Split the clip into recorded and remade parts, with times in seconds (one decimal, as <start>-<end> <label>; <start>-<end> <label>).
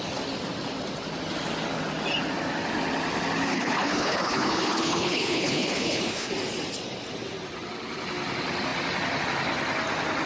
0.0-3.5 recorded; 3.5-6.3 remade; 6.3-10.3 recorded